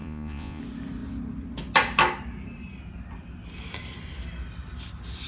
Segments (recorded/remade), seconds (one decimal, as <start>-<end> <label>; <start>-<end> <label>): 0.0-0.6 remade; 0.6-5.3 recorded